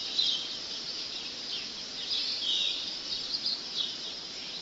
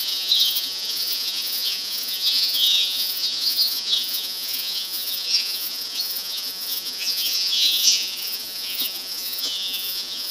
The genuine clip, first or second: first